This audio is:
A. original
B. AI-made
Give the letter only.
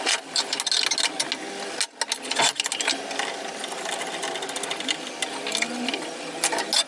A